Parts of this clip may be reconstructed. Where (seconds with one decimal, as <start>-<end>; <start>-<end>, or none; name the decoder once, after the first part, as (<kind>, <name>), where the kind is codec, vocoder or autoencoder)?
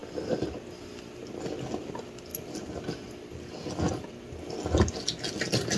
none